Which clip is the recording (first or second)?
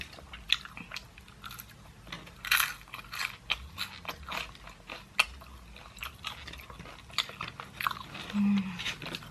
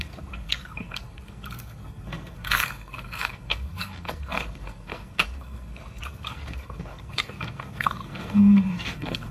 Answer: first